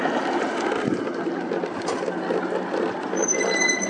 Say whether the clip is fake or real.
real